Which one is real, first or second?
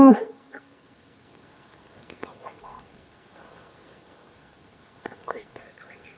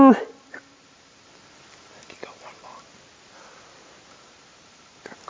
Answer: second